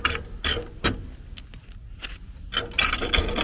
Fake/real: real